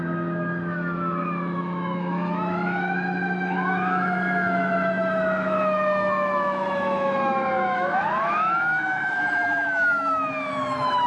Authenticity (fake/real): fake